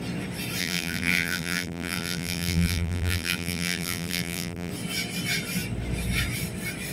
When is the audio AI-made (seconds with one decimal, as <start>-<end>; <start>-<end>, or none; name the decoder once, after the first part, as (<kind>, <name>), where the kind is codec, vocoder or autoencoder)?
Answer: 0.6-4.7 (vocoder, BigVGAN v2)